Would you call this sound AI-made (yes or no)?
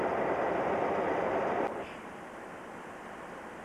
yes